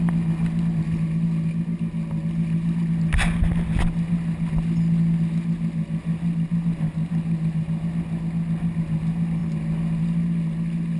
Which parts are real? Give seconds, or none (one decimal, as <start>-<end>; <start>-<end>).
0.0-11.0